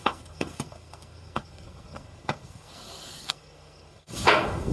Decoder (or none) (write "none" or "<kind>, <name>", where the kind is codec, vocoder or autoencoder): codec, SNAC